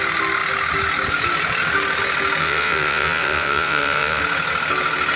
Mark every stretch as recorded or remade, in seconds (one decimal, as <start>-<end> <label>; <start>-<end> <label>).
0.0-2.4 recorded; 2.4-4.2 remade; 4.2-5.2 recorded